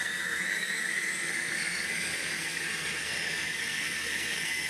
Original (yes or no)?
no